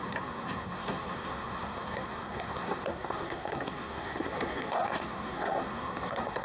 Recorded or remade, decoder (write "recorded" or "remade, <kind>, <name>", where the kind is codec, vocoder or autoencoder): remade, codec, SNAC